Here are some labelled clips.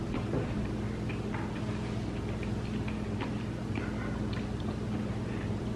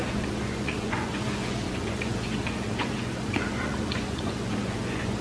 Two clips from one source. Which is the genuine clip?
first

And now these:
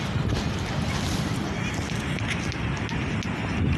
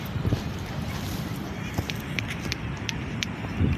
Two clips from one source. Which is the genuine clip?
first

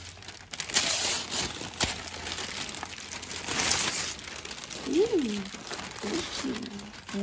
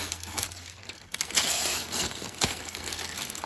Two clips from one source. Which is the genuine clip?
first